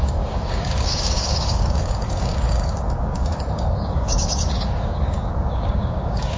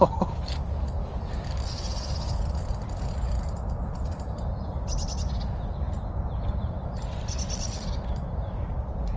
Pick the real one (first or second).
second